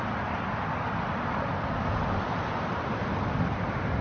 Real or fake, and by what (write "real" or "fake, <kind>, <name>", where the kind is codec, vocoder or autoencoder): real